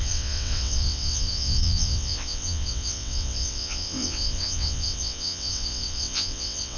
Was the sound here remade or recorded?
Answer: remade